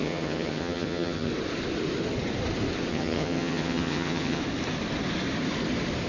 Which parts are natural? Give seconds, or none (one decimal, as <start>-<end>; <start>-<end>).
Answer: 1.3-2.9; 4.4-6.1